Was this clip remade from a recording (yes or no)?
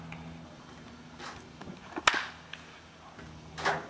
no